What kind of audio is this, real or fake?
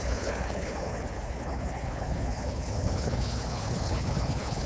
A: fake